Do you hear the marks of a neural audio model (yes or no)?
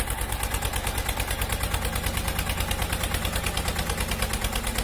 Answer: no